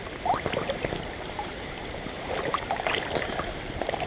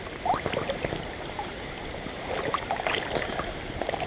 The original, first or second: second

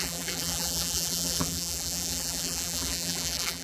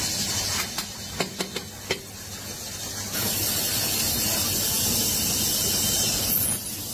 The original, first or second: second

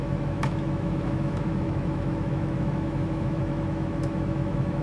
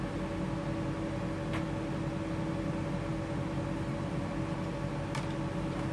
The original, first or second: second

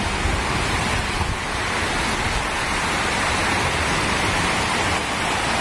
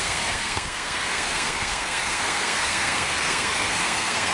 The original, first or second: first